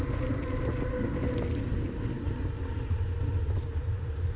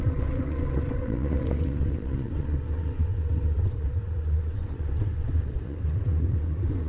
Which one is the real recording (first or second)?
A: first